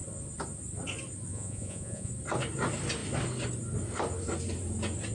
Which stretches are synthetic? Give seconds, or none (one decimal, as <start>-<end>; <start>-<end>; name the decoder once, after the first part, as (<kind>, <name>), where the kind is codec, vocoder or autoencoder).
1.3-2.1 (vocoder, Vocos)